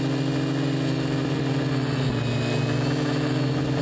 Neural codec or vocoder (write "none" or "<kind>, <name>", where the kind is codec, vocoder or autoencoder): none